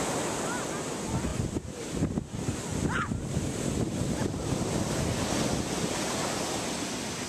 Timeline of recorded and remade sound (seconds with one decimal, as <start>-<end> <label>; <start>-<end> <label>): 0.0-2.5 recorded; 2.5-3.2 remade; 3.2-7.3 recorded